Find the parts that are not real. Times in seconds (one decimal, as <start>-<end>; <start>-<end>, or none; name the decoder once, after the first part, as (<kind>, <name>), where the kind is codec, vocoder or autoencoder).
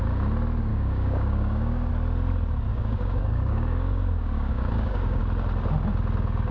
0.7-1.9 (codec, DAC); 2.7-5.2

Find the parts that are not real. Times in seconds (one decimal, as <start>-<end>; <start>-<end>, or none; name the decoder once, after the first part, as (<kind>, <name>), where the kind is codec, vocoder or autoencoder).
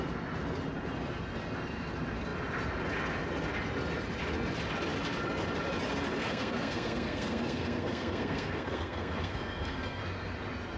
6.2-10.0 (codec, SNAC)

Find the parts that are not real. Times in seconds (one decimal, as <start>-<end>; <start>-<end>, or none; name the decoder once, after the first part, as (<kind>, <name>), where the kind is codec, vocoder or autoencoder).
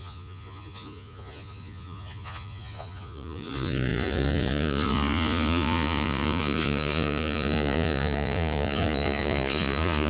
0.0-10.1 (vocoder, Vocos)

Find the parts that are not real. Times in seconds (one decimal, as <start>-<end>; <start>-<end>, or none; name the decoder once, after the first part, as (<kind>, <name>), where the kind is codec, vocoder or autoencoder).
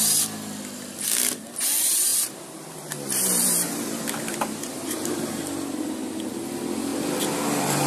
2.1-5.4 (vocoder, BigVGAN v2)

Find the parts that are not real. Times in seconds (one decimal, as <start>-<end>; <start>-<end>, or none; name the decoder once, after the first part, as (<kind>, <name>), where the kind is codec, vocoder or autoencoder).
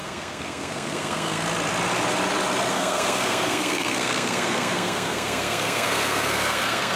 0.0-1.4 (codec, SNAC); 2.7-7.0